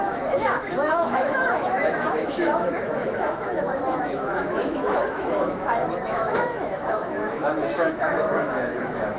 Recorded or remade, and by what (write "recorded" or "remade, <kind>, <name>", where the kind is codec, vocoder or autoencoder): remade, autoencoder, DAC-VAE